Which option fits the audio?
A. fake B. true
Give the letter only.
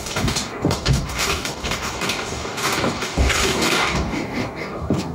A